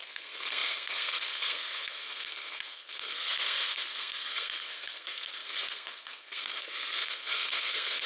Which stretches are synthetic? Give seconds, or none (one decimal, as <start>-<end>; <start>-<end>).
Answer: 0.0-8.1

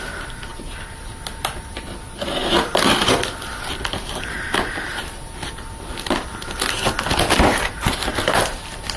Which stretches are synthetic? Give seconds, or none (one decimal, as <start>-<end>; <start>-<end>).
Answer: none

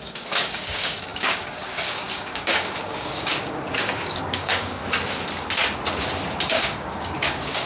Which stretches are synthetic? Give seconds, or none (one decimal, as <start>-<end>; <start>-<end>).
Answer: 0.0-4.8; 6.5-7.7